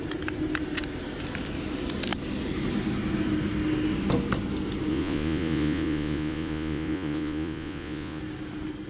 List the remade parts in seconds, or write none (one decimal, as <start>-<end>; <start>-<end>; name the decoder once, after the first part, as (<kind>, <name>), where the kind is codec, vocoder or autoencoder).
4.9-8.2 (vocoder, Vocos)